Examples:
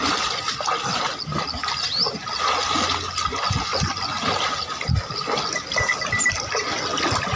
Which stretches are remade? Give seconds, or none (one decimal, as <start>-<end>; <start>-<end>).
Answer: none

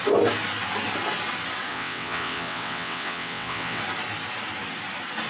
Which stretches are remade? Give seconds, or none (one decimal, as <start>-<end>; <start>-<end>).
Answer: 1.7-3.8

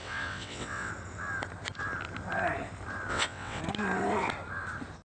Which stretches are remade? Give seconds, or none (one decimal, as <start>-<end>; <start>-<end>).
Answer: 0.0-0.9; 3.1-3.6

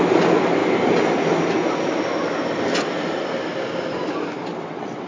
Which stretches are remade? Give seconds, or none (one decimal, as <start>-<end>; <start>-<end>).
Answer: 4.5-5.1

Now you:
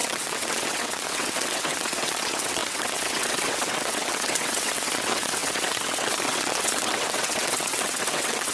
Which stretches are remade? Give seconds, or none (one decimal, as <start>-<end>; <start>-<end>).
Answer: 0.0-8.5

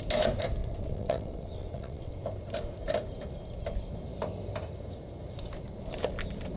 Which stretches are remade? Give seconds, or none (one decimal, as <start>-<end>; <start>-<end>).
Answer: 0.6-2.1

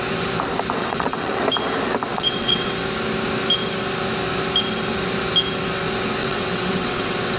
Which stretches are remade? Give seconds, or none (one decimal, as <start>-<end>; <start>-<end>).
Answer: 0.8-1.4; 2.1-2.7; 6.2-7.4

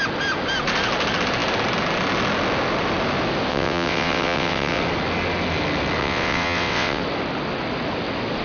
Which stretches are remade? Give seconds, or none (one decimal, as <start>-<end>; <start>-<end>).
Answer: 3.5-4.8; 6.0-7.0